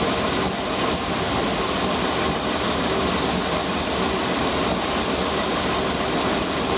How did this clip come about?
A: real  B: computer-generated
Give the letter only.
A